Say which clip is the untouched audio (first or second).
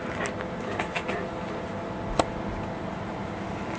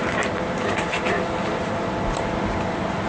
first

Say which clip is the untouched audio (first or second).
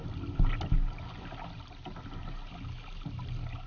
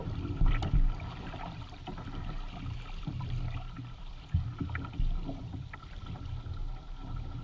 first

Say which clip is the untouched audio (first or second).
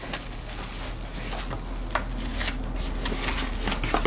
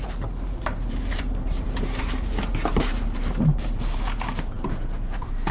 first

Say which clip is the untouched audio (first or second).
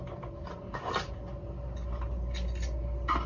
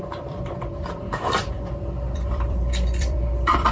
first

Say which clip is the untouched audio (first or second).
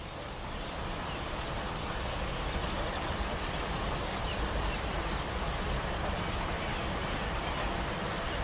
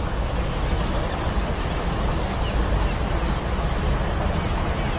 second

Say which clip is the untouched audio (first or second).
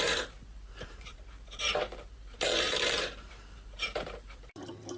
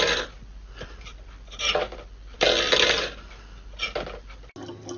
second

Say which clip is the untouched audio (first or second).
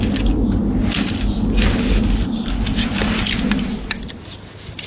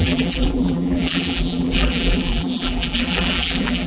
first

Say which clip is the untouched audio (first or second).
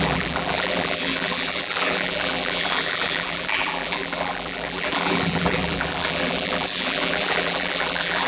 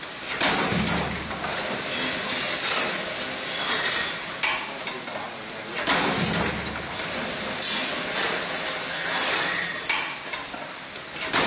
second